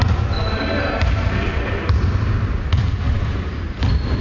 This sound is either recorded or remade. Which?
recorded